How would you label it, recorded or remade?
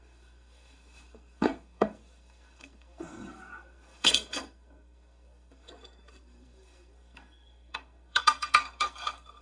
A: remade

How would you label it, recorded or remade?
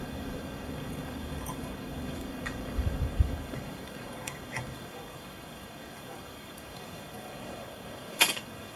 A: remade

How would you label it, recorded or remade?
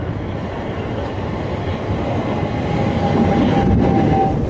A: recorded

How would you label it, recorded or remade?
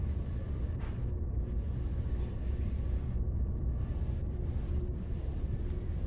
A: remade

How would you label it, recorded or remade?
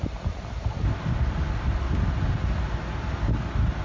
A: recorded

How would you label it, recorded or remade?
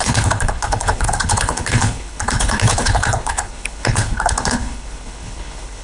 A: remade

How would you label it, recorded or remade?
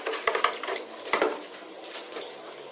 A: recorded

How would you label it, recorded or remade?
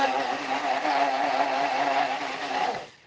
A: recorded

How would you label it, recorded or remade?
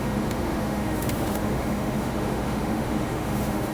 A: remade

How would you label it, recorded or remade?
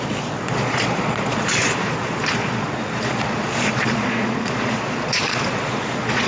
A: remade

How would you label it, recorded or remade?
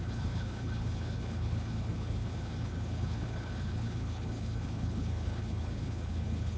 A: remade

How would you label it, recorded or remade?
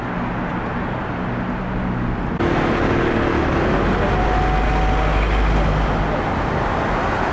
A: recorded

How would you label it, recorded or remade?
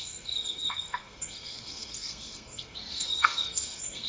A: remade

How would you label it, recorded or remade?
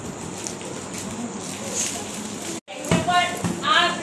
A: recorded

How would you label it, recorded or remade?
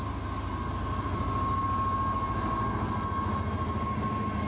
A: recorded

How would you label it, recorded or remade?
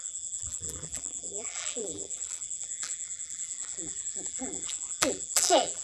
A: remade